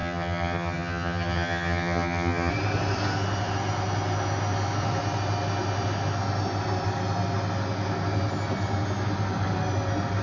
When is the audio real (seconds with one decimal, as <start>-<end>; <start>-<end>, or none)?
2.5-10.2